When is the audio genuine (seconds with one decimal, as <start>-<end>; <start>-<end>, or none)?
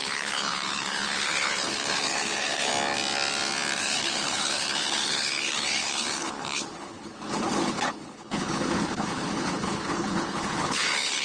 2.7-3.8